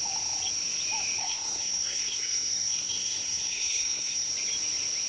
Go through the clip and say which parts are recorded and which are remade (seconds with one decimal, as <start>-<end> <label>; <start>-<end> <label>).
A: 0.0-1.2 recorded; 1.2-4.3 remade; 4.3-5.1 recorded